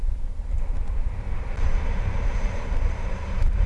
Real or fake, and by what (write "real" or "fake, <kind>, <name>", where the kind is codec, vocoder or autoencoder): fake, vocoder, BigVGAN v2